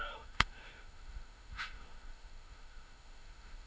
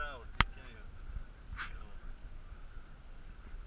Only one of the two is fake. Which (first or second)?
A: first